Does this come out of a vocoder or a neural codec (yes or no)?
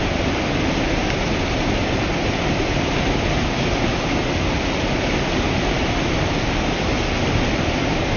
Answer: no